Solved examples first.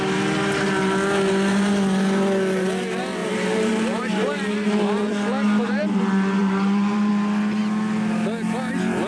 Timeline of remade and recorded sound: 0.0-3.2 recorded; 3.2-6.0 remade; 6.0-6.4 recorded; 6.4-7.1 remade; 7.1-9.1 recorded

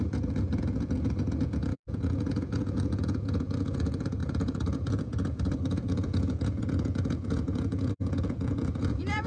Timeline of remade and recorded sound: 0.0-9.3 remade